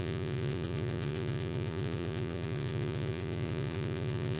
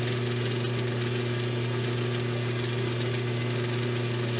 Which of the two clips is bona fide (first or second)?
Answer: second